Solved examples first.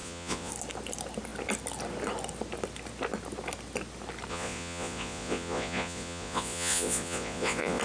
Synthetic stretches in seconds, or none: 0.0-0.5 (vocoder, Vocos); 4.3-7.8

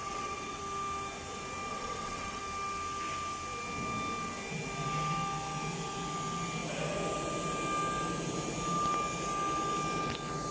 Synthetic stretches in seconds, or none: 0.0-0.6 (vocoder, WaveNeXt); 1.7-2.4

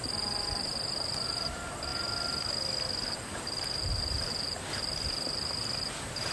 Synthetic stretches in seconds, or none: 0.0-1.9 (vocoder, BigVGAN v2); 3.1-6.3

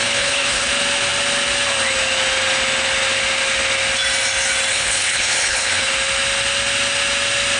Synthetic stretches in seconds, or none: 0.0-0.7 (codec, HILCodec); 4.7-5.9

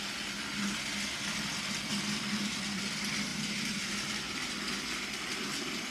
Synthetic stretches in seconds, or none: 1.9-2.8 (vocoder, BigVGAN v2); 3.3-4.5